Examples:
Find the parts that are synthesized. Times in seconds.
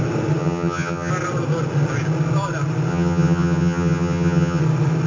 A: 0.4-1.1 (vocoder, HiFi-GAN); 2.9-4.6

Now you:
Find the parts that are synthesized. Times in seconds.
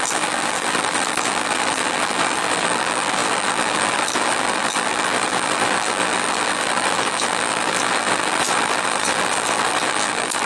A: 0.0-10.5 (vocoder, BigVGAN v2)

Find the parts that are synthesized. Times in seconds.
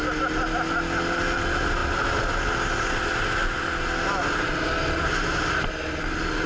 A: none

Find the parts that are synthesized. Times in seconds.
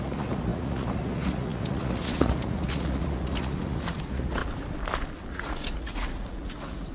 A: 0.0-4.4 (vocoder, Vocos); 5.3-6.9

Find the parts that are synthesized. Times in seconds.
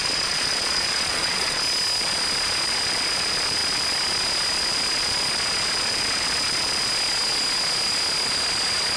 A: 0.0-1.6 (vocoder, Vocos)